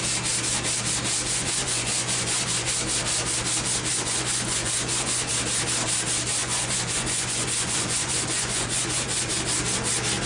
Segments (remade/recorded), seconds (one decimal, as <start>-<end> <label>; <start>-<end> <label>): 0.0-1.2 recorded; 1.2-2.9 remade; 2.9-3.9 recorded; 3.9-5.3 remade; 5.3-6.4 recorded; 6.4-9.3 remade; 9.3-10.3 recorded